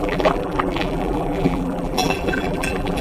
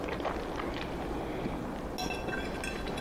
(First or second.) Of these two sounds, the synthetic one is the first